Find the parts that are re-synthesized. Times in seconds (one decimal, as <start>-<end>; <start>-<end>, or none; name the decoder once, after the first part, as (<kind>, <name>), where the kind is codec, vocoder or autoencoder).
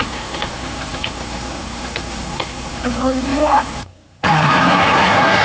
0.0-5.4 (codec, SNAC)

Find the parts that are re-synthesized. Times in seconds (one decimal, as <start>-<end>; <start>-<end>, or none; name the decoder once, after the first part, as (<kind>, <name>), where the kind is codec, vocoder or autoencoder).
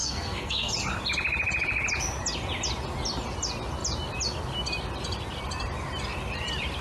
0.0-0.7 (codec, SNAC)